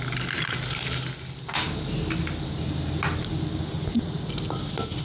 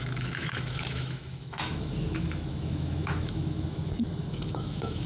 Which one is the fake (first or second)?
second